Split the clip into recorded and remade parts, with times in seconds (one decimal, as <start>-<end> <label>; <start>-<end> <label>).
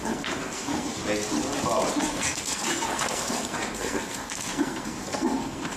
0.0-1.0 remade; 1.0-1.9 recorded; 1.9-5.8 remade